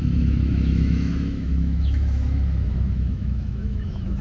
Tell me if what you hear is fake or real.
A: fake